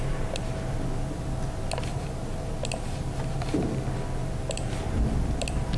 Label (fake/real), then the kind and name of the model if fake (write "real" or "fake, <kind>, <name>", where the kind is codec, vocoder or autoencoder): real